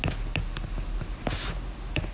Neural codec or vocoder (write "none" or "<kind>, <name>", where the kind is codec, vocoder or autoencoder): none